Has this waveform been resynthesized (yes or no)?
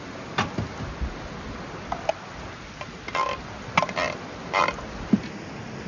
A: no